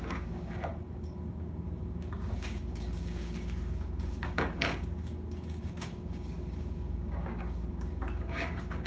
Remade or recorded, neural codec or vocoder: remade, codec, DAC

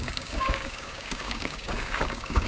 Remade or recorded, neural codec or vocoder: remade, codec, DAC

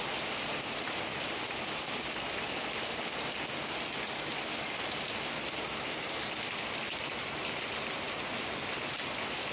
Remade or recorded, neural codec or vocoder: recorded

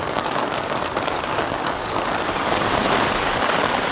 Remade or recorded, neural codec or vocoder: remade, codec, DAC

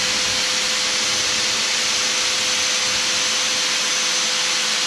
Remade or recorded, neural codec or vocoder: recorded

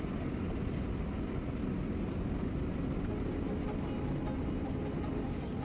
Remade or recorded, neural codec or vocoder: recorded